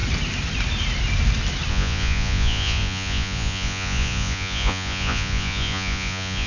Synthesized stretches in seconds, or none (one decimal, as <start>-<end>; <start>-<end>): 1.7-6.5